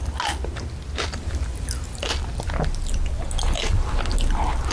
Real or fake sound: real